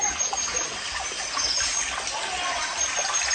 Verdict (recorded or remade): recorded